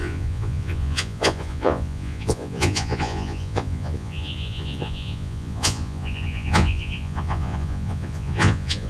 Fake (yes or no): yes